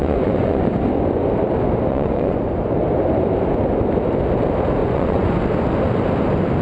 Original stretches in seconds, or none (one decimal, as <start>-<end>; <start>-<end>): 0.7-1.9; 2.4-4.8; 5.4-6.6